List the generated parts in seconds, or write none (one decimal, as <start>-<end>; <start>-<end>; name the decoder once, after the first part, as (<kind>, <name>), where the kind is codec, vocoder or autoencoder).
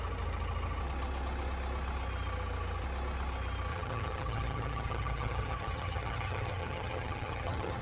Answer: 3.7-7.8 (vocoder, HiFi-GAN)